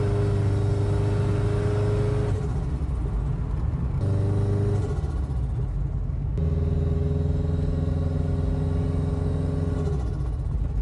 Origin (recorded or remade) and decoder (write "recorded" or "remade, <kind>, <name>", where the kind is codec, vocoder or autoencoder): recorded